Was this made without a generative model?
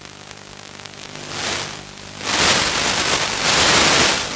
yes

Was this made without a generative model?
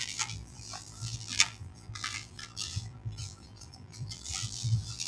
no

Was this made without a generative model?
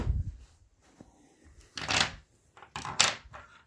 no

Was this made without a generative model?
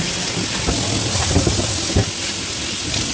yes